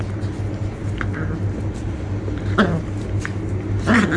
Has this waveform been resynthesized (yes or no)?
no